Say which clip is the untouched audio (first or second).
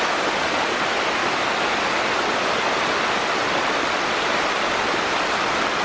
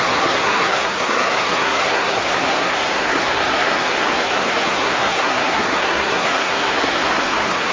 first